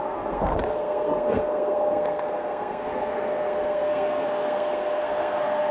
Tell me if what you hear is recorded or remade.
remade